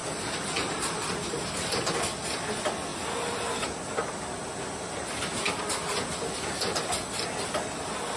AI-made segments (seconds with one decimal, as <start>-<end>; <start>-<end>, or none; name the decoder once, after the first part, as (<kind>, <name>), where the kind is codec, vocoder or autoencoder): 0.0-1.1 (vocoder, BigVGAN v2)